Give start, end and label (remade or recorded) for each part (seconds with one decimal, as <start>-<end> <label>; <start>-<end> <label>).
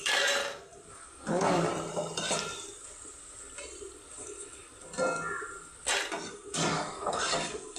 0.0-0.4 remade; 0.4-0.9 recorded; 0.9-1.7 remade; 1.7-6.3 recorded; 6.3-7.8 remade